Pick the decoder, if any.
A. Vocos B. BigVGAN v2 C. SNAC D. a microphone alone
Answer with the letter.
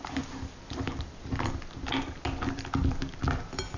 D